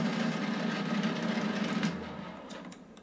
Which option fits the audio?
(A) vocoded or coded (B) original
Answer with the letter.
B